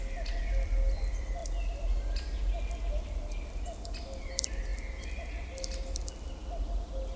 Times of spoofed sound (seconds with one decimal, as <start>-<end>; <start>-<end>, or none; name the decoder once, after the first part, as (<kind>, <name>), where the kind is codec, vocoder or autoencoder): none